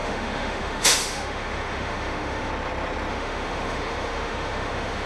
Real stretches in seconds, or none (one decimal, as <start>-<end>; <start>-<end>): 2.5-3.1